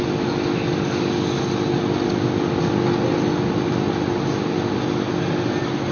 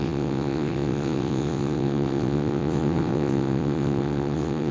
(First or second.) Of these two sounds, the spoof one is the second